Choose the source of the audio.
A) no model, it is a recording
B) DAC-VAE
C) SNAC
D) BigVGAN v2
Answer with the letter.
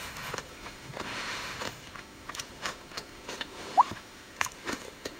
B